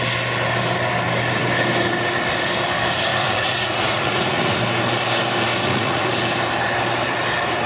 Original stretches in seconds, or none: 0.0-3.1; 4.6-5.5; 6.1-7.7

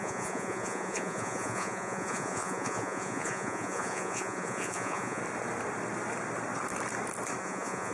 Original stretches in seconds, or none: 5.2-7.4

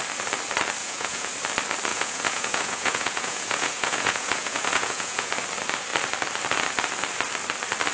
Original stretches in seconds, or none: 0.0-0.8; 1.3-1.9; 5.3-7.9

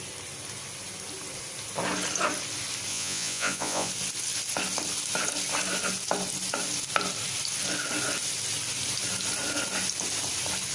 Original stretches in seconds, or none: 0.0-2.9; 3.9-10.7

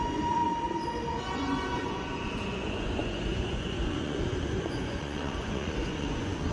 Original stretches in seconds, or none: 0.4-1.1

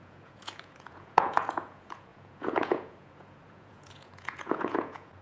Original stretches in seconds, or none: none

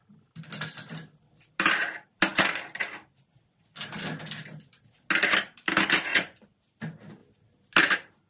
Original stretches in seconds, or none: 0.0-6.1; 6.6-8.3